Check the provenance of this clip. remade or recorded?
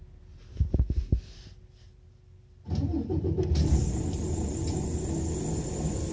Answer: recorded